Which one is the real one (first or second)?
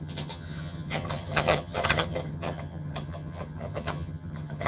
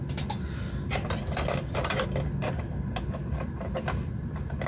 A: second